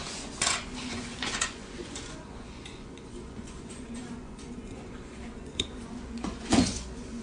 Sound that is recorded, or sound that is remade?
remade